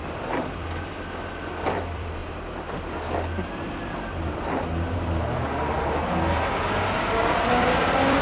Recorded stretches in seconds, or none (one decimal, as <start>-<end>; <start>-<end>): 2.2-6.0